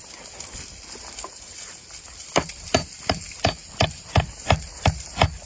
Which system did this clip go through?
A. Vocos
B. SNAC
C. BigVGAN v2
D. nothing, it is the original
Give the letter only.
D